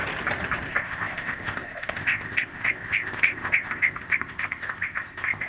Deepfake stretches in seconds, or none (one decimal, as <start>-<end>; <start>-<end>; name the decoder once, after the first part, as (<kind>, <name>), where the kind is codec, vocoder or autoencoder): 0.7-5.5 (codec, ZipCodec)